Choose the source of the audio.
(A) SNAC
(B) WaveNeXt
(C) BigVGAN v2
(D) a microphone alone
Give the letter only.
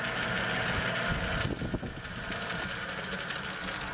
D